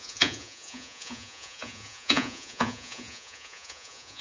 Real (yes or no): no